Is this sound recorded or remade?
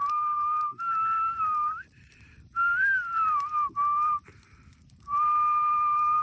remade